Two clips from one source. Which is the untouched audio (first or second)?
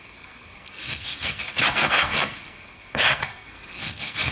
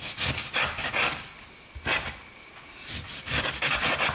second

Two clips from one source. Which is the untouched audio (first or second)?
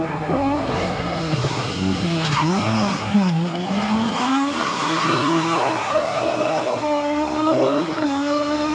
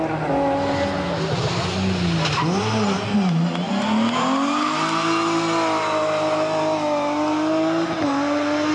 second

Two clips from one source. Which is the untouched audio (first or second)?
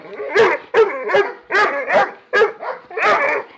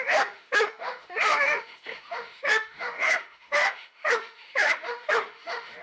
first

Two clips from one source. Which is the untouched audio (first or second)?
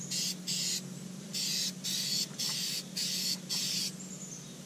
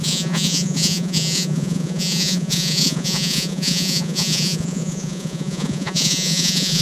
first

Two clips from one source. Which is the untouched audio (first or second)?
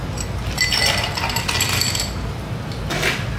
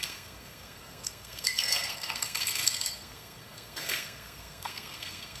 first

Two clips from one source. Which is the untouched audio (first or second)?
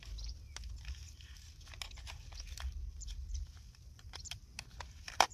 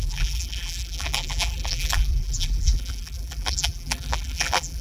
first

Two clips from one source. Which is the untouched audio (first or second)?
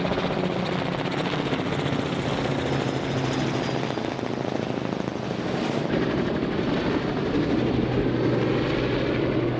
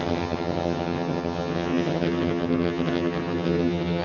first